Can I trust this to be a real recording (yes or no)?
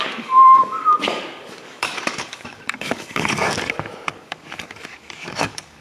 no